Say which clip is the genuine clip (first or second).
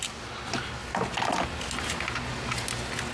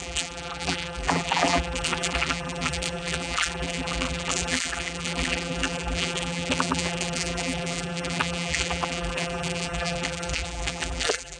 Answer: first